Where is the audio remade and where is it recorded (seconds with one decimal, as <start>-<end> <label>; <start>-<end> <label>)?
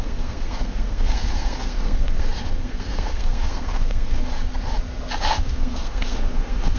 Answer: 0.0-4.5 remade; 4.5-5.2 recorded; 5.2-6.8 remade